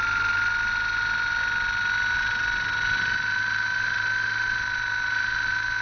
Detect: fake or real real